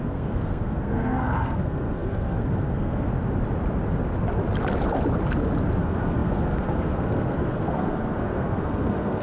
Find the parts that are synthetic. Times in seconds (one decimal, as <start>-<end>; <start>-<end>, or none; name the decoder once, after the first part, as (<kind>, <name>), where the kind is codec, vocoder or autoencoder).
0.0-3.1 (codec, SNAC); 5.8-9.2